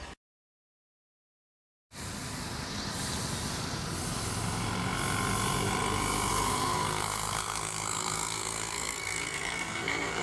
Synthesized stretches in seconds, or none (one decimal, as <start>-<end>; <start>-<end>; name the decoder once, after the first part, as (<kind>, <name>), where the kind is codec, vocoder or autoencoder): 6.3-10.2 (codec, SNAC)